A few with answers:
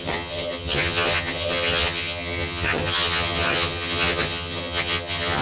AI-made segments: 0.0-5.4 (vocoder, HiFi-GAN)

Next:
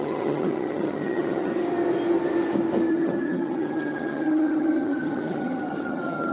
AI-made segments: 0.0-1.5 (vocoder, HiFi-GAN); 2.9-6.3

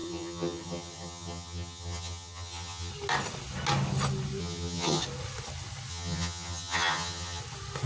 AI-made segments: 0.0-2.9 (vocoder, HiFi-GAN); 4.4-5.0; 5.9-7.4

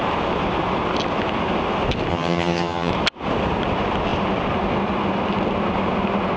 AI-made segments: 2.1-2.9 (vocoder, HiFi-GAN)

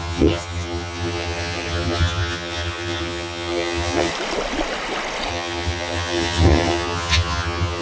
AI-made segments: 0.0-4.1 (vocoder, HiFi-GAN); 5.3-7.8

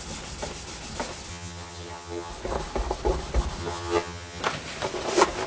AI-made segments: 1.3-2.3 (vocoder, HiFi-GAN); 3.6-4.4

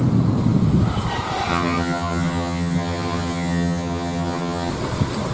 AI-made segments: 1.5-4.7 (vocoder, HiFi-GAN)